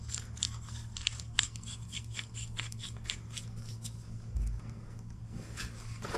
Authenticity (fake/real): fake